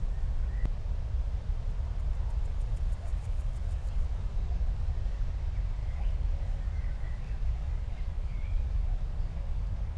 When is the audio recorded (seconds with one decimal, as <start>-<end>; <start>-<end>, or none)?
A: 0.0-3.1; 5.3-5.8